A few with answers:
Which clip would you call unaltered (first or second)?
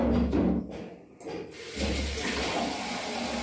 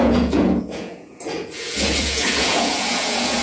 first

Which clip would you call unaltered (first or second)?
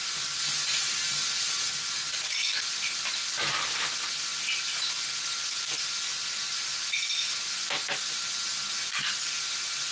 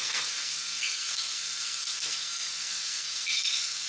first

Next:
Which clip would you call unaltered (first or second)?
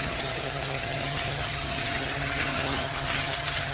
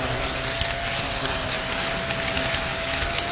second